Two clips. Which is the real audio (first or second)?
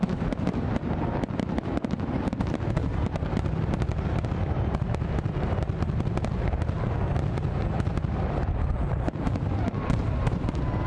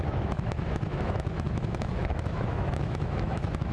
first